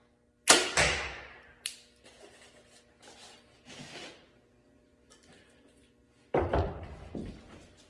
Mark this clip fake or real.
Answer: real